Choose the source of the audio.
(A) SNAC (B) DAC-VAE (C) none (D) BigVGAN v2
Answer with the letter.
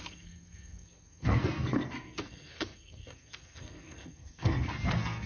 A